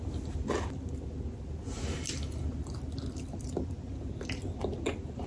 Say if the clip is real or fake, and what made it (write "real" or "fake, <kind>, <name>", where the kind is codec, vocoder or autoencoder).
real